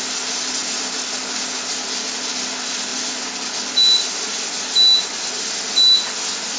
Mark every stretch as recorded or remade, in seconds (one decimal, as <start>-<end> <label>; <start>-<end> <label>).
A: 0.0-6.6 recorded